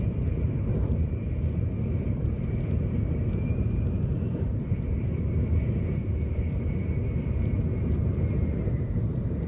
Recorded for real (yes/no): no